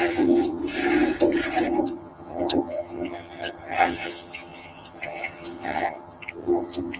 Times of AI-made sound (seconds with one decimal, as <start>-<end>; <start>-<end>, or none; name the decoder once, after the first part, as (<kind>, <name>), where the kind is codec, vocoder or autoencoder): 0.0-0.6 (vocoder, HiFi-GAN); 1.8-7.0